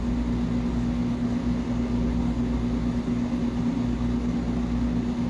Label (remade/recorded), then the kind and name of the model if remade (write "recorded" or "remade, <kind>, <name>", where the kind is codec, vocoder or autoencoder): recorded